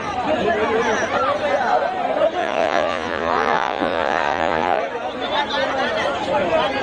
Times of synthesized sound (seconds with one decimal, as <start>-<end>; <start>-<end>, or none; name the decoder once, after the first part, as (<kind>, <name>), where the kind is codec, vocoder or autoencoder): 2.4-4.8 (vocoder, Vocos)